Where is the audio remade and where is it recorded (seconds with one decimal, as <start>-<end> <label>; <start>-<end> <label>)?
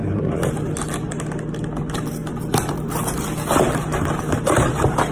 0.0-5.1 recorded